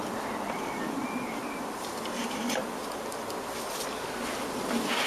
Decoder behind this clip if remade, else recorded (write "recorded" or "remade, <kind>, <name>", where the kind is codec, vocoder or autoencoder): recorded